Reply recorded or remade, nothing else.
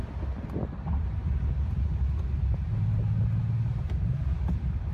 recorded